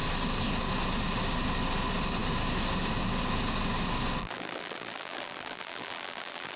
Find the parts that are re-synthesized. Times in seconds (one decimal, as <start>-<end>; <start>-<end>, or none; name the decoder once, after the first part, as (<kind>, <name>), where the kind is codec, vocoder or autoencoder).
4.2-6.6 (vocoder, BigVGAN v2)